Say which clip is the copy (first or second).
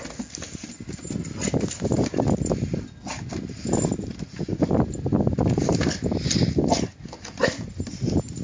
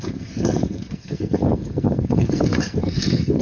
second